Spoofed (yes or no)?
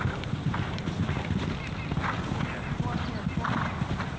no